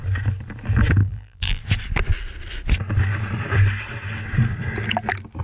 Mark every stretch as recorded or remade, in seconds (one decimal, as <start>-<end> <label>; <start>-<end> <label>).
0.0-1.0 recorded; 1.0-1.6 remade; 1.6-5.4 recorded